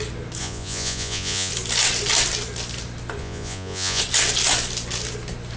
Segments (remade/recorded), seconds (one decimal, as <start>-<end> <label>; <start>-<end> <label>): 0.0-0.4 recorded; 0.4-1.5 remade; 1.5-3.2 recorded; 3.2-4.0 remade; 4.0-5.6 recorded